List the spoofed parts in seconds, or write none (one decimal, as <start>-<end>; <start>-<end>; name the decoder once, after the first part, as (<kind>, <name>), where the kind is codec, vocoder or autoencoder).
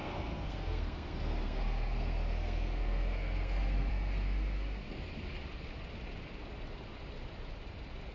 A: 0.0-4.9 (codec, SNAC)